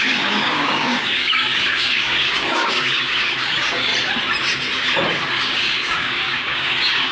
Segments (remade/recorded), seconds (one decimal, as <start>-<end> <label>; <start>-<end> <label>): 0.0-3.9 remade; 3.9-5.3 recorded; 5.3-7.1 remade